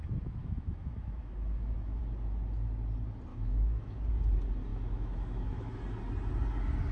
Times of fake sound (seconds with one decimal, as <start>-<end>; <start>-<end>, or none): 0.4-2.0; 3.3-4.0; 4.7-5.7